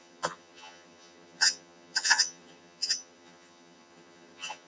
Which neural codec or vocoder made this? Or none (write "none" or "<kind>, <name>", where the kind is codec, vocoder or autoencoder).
vocoder, HiFi-GAN